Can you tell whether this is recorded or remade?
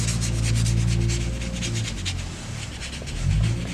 recorded